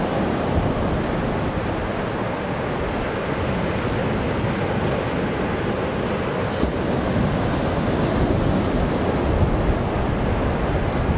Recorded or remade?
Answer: recorded